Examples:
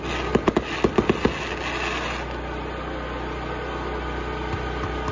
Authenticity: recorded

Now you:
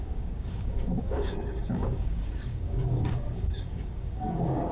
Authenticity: remade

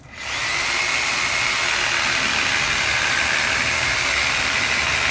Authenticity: recorded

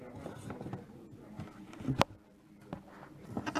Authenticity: recorded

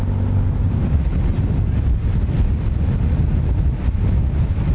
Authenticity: recorded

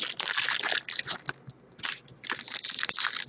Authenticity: recorded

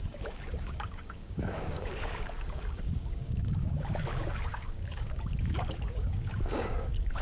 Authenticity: remade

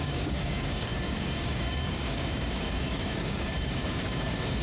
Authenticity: remade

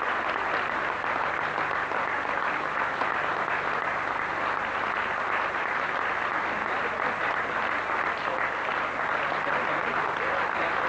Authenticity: recorded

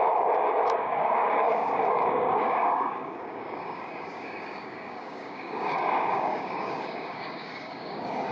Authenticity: remade